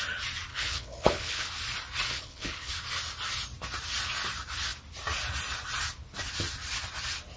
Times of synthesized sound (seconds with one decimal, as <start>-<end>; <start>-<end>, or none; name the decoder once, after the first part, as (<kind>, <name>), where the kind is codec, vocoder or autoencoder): 0.5-1.5 (codec, HILCodec); 2.1-2.7